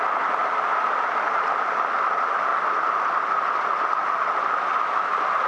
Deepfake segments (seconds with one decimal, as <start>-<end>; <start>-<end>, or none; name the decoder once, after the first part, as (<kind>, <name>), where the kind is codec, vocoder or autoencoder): none